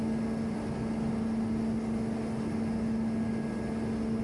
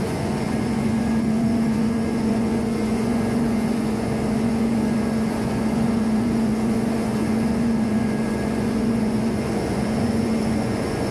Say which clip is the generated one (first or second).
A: second